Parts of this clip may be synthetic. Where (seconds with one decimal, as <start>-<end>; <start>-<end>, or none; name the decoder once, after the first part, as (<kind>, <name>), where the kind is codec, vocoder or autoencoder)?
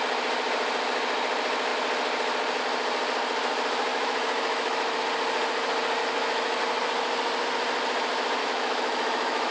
3.9-5.0 (autoencoder, DAC-VAE); 6.0-6.6; 8.4-9.5